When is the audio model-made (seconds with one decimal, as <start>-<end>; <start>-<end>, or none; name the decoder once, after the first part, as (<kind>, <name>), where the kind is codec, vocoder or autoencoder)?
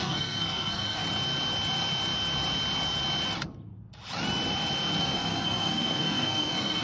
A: 0.0-1.0 (codec, SNAC); 5.0-6.8